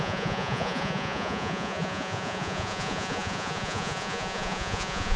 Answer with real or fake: fake